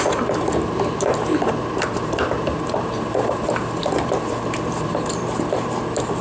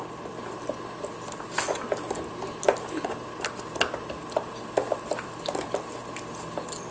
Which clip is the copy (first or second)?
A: first